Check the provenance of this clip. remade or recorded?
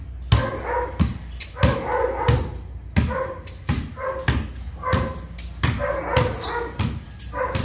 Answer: recorded